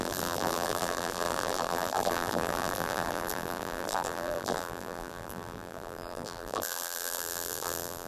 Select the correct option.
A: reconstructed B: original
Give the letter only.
A